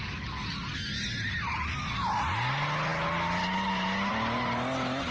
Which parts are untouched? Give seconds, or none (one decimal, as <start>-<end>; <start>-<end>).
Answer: 0.0-5.1